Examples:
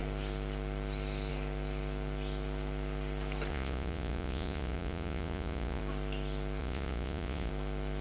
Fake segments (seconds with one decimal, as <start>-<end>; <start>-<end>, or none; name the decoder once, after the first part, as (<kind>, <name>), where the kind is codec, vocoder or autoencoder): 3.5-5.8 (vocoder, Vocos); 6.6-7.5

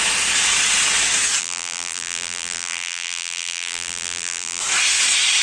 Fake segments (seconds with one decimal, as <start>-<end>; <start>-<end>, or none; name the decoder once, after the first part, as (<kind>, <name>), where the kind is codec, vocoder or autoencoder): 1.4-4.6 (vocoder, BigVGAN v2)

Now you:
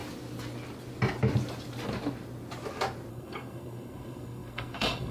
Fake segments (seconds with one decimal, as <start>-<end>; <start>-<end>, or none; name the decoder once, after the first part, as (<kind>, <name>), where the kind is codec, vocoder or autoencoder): 3.1-5.1 (codec, SNAC)

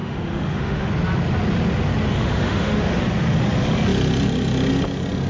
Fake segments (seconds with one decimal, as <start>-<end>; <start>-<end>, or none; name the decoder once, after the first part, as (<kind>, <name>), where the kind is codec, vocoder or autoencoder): 0.0-0.9 (autoencoder, DAC-VAE); 2.1-3.0

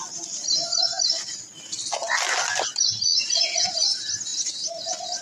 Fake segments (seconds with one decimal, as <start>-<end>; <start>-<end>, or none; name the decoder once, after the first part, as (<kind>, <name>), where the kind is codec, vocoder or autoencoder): none